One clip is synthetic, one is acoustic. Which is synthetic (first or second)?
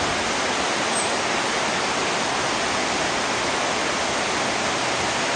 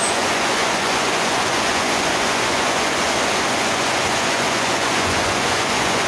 second